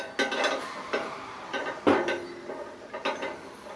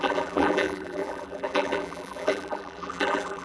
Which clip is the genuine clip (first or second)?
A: first